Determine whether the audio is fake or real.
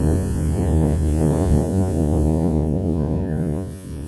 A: fake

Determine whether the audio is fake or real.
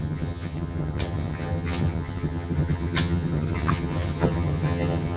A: fake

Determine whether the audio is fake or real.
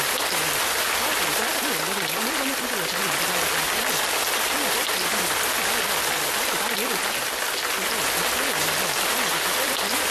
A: real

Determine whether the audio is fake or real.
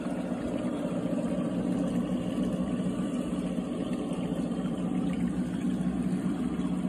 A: real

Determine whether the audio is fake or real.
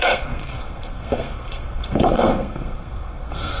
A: fake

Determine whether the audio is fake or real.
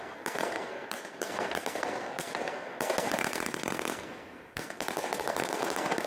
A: fake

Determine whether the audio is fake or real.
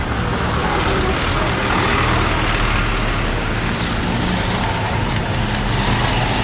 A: real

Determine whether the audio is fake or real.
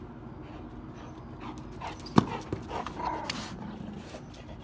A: real